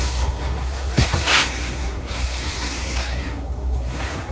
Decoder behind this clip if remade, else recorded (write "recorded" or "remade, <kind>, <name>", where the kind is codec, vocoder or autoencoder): remade, codec, SNAC